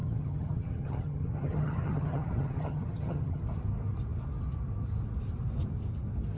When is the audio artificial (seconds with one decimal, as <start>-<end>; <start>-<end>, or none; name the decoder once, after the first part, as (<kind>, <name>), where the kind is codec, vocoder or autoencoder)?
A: 0.0-3.4 (vocoder, HiFi-GAN)